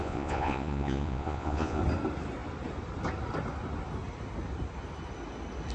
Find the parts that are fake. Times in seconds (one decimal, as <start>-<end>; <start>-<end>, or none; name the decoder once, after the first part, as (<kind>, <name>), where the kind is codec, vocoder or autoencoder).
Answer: 0.0-1.8 (vocoder, Vocos)